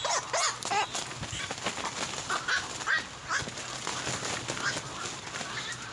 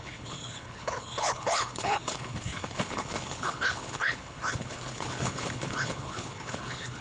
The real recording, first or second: first